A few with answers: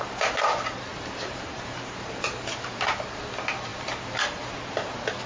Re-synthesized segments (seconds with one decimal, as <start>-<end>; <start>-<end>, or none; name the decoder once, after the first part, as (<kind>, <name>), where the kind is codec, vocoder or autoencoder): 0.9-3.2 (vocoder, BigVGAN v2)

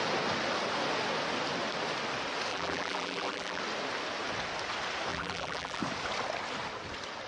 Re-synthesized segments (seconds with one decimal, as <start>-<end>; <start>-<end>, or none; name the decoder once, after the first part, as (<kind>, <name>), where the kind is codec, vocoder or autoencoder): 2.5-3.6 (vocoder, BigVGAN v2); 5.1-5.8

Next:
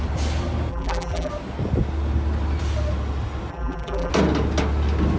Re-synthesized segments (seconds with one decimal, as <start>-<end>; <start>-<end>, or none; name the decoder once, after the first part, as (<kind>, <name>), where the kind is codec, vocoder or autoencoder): 0.7-1.3 (vocoder, BigVGAN v2); 3.5-4.1

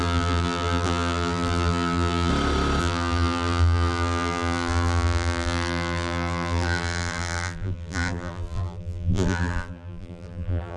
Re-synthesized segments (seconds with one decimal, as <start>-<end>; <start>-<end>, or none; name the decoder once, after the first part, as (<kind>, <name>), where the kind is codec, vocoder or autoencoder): 0.0-2.3 (vocoder, BigVGAN v2); 2.8-10.8

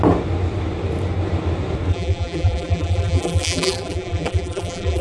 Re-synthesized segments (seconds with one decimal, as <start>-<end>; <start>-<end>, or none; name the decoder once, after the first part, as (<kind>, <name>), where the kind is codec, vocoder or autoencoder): 1.9-5.0 (vocoder, BigVGAN v2)

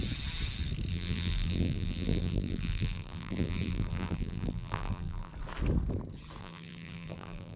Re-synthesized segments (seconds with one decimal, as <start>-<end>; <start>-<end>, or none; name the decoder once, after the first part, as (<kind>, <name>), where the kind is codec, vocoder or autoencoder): 0.9-5.3 (vocoder, BigVGAN v2); 6.4-7.6

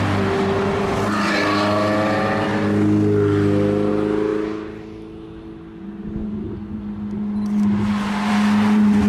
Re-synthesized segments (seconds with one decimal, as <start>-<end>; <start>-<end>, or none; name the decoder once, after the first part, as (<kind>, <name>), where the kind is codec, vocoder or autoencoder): none

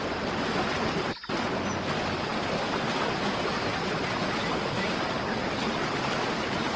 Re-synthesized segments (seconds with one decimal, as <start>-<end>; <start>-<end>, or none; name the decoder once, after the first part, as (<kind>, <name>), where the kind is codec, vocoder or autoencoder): none